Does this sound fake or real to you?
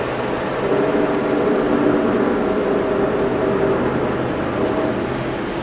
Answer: real